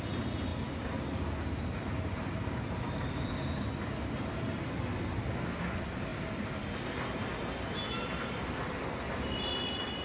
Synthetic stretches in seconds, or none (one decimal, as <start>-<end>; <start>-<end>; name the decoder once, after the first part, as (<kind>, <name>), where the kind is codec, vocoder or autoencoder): none